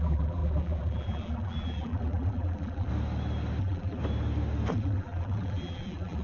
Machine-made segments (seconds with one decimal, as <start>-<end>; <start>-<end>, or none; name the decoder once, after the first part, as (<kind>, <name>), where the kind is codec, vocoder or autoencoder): 0.0-2.9 (vocoder, BigVGAN v2); 3.6-4.0; 4.7-6.2